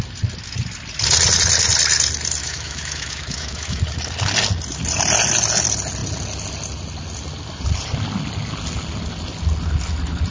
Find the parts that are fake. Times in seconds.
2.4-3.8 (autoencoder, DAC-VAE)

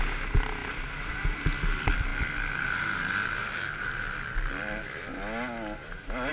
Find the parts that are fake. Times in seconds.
0.6-1.4 (vocoder, BigVGAN v2)

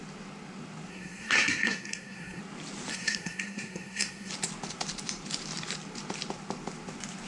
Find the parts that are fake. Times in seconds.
0.9-2.4 (codec, SNAC); 2.9-4.3

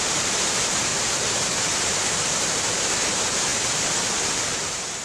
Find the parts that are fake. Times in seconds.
0.0-0.9 (vocoder, BigVGAN v2); 1.4-5.0

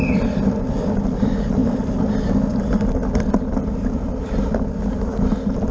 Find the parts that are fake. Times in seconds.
none

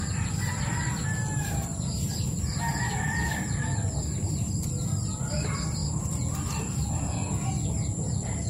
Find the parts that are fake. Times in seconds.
0.0-5.8 (vocoder, BigVGAN v2); 6.6-7.2; 7.7-8.5